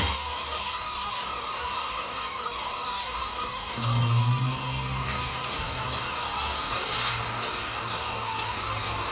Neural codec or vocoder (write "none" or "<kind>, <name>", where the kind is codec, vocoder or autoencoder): codec, DAC